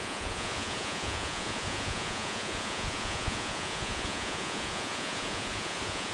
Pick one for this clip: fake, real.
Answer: fake